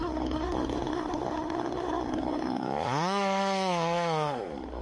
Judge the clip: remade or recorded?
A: remade